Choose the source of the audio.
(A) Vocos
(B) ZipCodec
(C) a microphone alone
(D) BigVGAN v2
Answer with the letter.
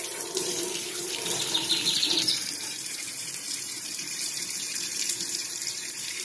D